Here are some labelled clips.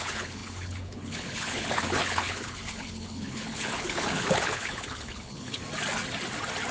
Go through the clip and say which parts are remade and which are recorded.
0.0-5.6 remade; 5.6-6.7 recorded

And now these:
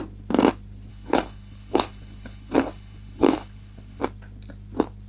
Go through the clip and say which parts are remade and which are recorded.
0.0-0.9 recorded; 0.9-4.0 remade; 4.0-5.1 recorded

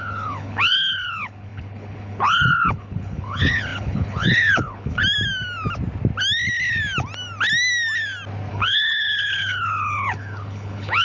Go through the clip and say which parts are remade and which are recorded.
0.0-5.0 remade; 5.0-8.5 recorded; 8.5-11.0 remade

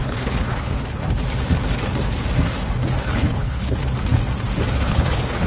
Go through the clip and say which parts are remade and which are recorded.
0.0-1.0 remade; 1.0-3.0 recorded; 3.0-3.8 remade; 3.8-4.7 recorded; 4.7-5.5 remade

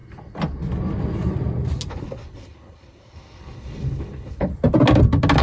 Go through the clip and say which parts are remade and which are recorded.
0.0-1.9 recorded; 1.9-4.5 remade; 4.5-5.4 recorded

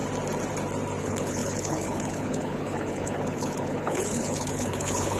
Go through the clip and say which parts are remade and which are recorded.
0.0-1.0 recorded; 1.0-5.2 remade